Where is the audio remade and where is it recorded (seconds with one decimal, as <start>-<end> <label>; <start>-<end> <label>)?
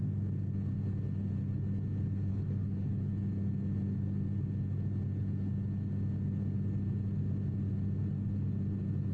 0.0-2.3 recorded; 2.3-3.1 remade; 3.1-9.1 recorded